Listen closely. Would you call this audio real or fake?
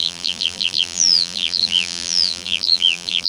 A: fake